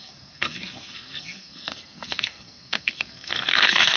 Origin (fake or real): fake